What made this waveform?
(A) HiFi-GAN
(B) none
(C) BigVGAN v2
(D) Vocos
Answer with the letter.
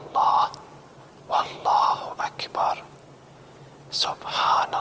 B